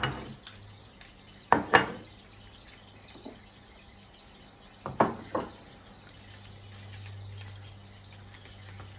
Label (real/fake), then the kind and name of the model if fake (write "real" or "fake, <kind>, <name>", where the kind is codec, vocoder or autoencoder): real